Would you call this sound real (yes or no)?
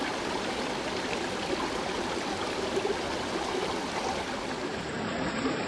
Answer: yes